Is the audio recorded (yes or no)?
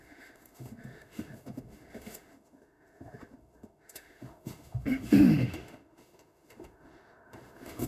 no